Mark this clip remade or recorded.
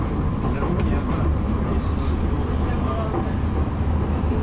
recorded